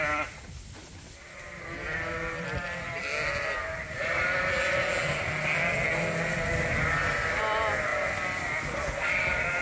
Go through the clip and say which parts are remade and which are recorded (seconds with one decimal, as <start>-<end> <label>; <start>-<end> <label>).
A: 0.0-9.6 recorded